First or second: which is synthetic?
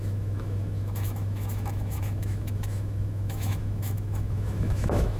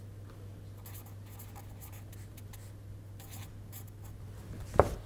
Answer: first